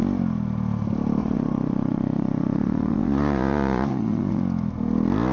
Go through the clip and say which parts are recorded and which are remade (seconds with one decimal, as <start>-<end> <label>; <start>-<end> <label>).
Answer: 0.0-1.2 recorded; 1.2-4.4 remade; 4.4-5.3 recorded